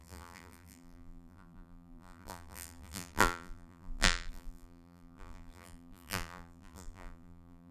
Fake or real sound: fake